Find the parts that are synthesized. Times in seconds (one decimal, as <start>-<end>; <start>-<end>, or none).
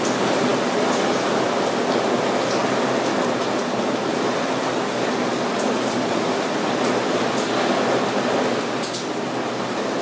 none